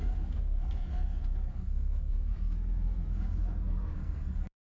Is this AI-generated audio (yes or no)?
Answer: yes